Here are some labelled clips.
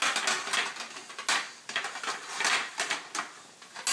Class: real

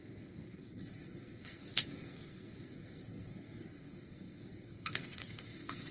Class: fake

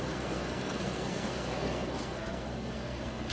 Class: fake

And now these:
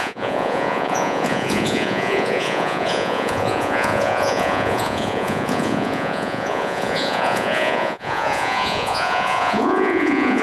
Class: fake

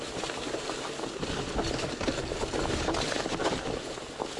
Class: real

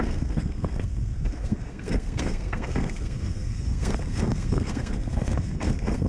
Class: fake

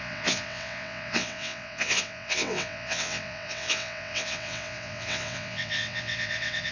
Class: fake